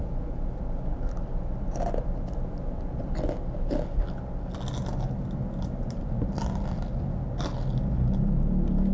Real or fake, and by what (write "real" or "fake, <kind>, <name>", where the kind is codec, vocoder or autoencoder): real